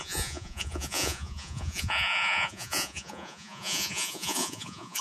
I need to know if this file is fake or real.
fake